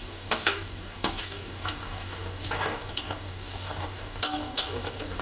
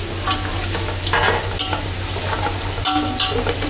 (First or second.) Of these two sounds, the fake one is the first